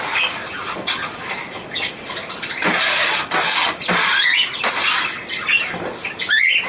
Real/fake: real